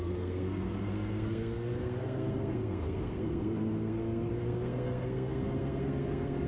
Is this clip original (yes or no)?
no